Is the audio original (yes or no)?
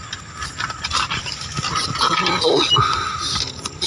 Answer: yes